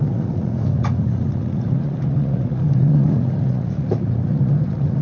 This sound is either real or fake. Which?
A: fake